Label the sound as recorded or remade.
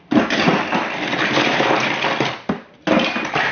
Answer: recorded